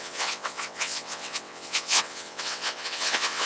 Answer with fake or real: fake